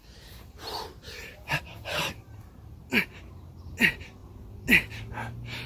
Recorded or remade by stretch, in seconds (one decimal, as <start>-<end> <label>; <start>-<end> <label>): 0.0-3.4 remade; 3.4-5.7 recorded